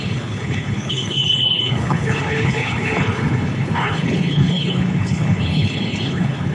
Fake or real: fake